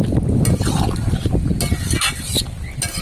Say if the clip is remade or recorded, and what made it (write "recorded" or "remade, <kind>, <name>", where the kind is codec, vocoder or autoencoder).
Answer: recorded